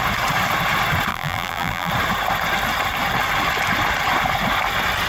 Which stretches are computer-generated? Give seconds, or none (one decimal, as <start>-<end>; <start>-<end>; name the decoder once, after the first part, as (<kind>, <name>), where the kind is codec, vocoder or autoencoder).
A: 1.1-1.9 (vocoder, BigVGAN v2)